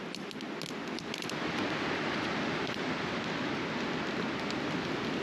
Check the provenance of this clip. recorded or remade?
recorded